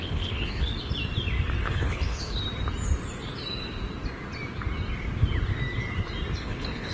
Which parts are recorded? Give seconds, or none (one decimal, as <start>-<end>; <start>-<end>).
0.7-1.6; 2.4-6.4